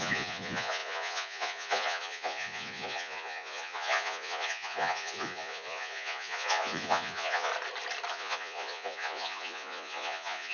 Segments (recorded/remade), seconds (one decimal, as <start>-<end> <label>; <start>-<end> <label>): 0.0-7.5 remade; 7.5-8.1 recorded; 8.1-10.5 remade